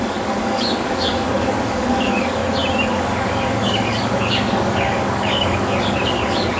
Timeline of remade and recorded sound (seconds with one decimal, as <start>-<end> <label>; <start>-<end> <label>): 0.0-2.4 remade; 2.4-2.9 recorded; 2.9-6.6 remade